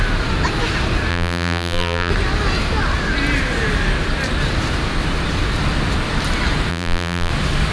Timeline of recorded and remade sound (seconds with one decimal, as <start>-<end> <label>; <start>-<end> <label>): 0.0-1.1 recorded; 1.1-2.1 remade; 2.1-6.7 recorded; 6.7-7.3 remade; 7.3-7.7 recorded